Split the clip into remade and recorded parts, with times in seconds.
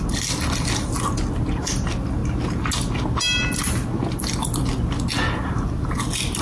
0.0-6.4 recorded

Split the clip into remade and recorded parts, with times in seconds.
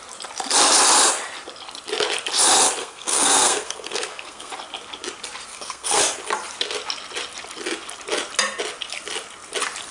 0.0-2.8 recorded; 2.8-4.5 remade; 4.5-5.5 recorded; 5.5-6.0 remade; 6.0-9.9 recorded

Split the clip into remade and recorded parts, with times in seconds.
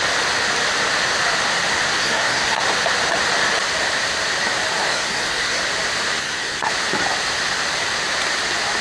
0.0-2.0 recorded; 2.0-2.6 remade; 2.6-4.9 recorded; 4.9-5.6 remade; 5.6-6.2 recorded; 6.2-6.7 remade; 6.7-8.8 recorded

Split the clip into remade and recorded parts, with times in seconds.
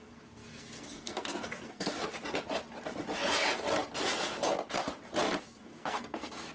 0.0-2.0 remade; 2.0-5.4 recorded; 5.4-6.5 remade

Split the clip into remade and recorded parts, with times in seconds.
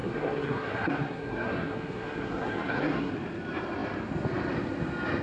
0.0-3.1 remade; 3.1-5.2 recorded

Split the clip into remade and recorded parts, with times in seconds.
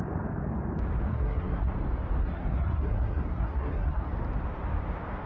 0.0-1.1 recorded; 1.1-1.7 remade; 1.7-2.2 recorded; 2.2-4.1 remade; 4.1-5.3 recorded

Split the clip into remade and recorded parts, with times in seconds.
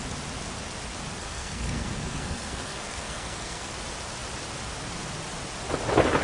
0.0-1.2 recorded; 1.2-3.7 remade; 3.7-6.2 recorded